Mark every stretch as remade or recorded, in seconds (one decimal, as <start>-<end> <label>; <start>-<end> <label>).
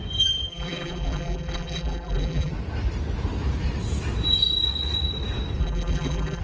0.0-0.5 recorded; 0.5-2.5 remade; 2.5-5.6 recorded; 5.6-6.4 remade